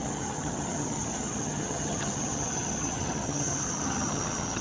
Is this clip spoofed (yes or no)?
yes